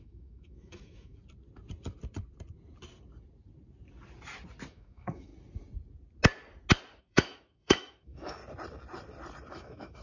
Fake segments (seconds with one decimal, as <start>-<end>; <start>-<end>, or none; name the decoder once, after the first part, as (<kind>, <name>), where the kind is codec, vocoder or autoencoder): 0.0-1.2 (autoencoder, DAC-VAE); 4.7-5.3; 7.0-8.4; 9.5-10.0